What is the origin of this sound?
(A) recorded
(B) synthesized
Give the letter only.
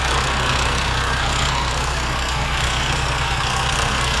B